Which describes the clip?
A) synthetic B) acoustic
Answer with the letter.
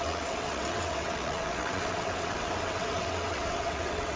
A